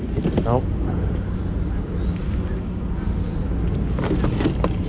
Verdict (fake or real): real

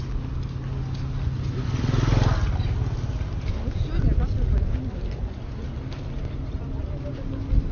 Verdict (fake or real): real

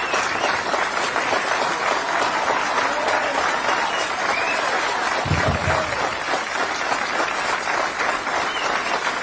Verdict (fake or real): real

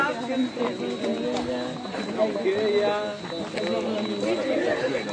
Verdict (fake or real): real